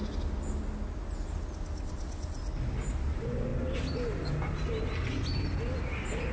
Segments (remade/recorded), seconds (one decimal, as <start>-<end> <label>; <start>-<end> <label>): 0.0-6.3 recorded